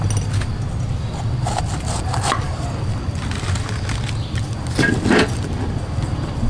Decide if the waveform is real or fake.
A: real